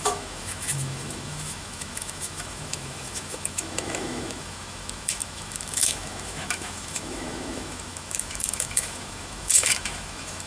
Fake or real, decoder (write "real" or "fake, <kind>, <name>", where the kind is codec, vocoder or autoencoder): fake, autoencoder, DAC-VAE